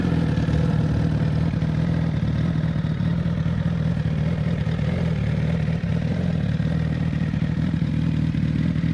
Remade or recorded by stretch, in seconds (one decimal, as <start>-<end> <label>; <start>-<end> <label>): 0.0-5.9 recorded; 5.9-7.9 remade; 7.9-8.9 recorded